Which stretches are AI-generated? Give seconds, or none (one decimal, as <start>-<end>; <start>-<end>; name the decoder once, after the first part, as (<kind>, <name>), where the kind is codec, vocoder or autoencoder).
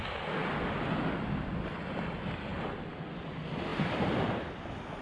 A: 2.5-3.1 (vocoder, BigVGAN v2); 3.7-4.2